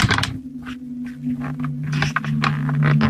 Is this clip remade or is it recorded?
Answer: recorded